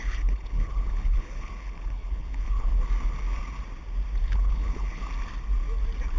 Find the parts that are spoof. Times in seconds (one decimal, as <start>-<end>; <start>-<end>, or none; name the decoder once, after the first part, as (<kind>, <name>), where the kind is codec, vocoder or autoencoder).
0.0-2.7 (codec, HILCodec); 4.2-5.0